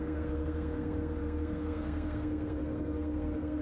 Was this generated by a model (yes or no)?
yes